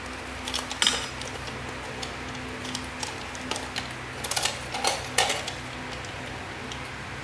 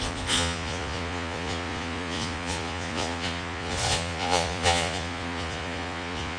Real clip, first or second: first